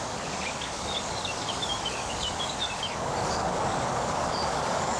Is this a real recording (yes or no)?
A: no